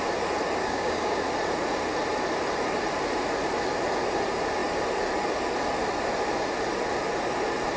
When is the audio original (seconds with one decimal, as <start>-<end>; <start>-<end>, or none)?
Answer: 0.0-0.6; 1.2-7.8